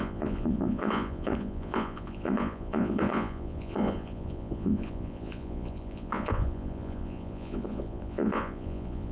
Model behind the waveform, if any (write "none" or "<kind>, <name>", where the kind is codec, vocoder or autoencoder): vocoder, Vocos